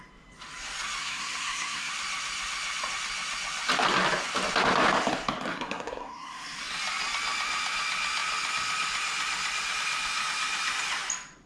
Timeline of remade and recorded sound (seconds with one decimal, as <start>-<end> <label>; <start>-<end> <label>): 0.0-1.0 recorded; 1.0-1.9 remade; 1.9-5.5 recorded; 5.5-6.6 remade; 6.6-11.5 recorded